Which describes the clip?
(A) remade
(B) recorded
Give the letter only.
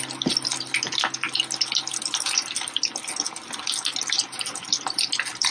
B